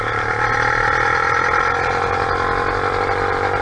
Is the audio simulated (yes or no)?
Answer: no